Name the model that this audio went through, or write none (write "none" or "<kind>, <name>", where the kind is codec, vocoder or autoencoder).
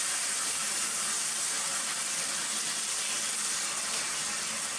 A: none